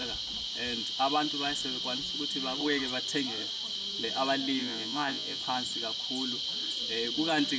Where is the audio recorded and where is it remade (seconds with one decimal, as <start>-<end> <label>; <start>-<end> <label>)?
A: 0.0-4.6 recorded; 4.6-5.4 remade; 5.4-7.6 recorded